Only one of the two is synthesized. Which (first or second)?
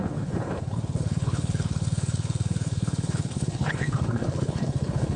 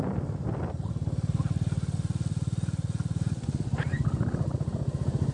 first